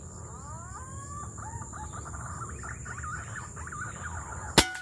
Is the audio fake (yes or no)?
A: no